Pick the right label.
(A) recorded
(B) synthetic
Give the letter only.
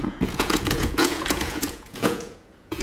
B